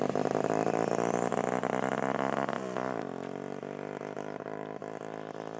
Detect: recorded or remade recorded